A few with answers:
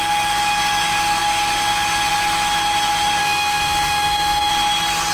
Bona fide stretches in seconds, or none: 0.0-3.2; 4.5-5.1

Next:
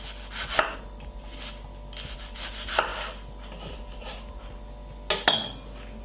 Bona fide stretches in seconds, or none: 0.0-6.0